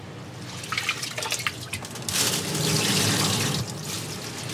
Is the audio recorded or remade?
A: recorded